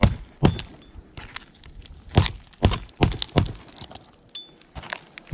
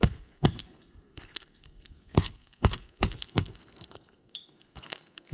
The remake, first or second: second